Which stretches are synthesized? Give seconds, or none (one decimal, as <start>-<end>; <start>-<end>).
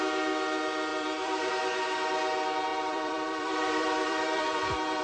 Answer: 0.9-1.5; 2.7-5.0